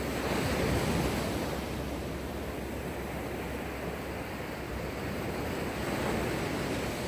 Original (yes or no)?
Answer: yes